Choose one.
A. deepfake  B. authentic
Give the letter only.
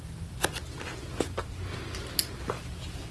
B